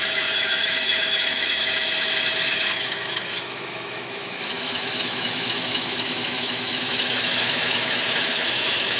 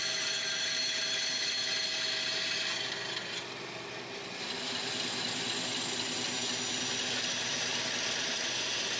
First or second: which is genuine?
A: second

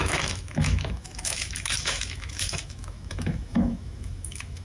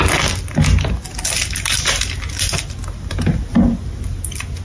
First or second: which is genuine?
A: second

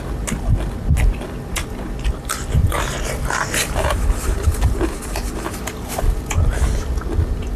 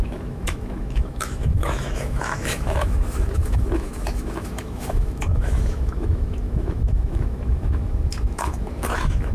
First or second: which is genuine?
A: first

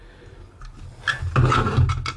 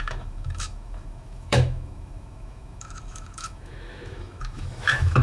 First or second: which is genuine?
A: first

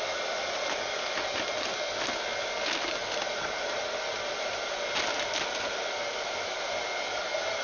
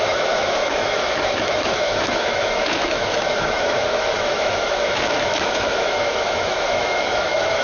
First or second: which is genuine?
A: first